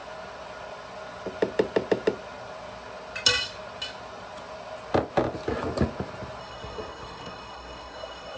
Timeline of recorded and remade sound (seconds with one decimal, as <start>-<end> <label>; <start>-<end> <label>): 0.0-6.4 recorded; 6.4-8.4 remade